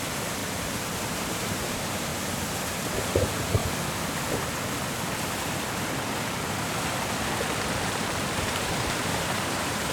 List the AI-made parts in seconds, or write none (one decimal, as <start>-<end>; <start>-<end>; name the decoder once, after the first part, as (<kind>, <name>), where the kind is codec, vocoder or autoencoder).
0.0-2.1 (vocoder, BigVGAN v2); 3.0-3.6; 7.8-9.9